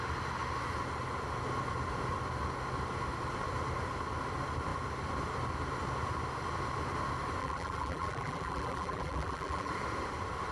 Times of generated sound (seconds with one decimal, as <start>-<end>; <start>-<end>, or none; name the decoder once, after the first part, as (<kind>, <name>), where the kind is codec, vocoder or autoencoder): 7.4-9.7 (vocoder, BigVGAN v2)

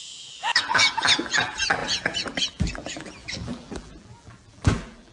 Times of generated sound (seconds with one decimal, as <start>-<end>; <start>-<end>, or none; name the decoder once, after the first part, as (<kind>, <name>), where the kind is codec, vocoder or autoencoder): 0.0-5.1 (vocoder, BigVGAN v2)

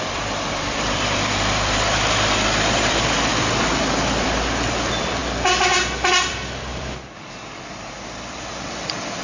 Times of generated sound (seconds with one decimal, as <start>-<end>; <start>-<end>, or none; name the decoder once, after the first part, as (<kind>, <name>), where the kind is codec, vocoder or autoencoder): 0.0-5.2 (vocoder, BigVGAN v2); 6.2-9.2

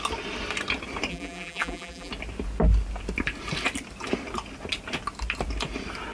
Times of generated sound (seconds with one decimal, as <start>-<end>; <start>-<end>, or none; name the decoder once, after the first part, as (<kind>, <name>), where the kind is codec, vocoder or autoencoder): 1.1-2.1 (vocoder, BigVGAN v2)

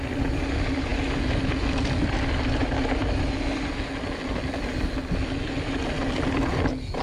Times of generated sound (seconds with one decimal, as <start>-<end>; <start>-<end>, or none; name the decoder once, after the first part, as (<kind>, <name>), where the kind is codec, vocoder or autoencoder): none